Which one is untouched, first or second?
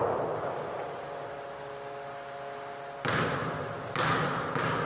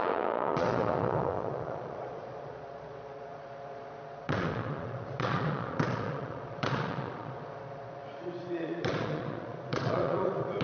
first